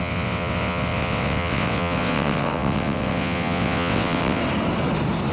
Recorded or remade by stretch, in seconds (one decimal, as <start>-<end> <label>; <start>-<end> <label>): 0.0-4.4 remade; 4.4-5.3 recorded